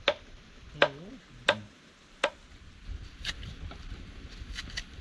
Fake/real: real